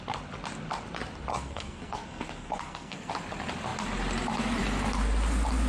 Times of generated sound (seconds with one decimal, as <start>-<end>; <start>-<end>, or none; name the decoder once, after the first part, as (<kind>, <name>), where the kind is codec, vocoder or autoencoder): 1.3-3.1 (codec, SNAC)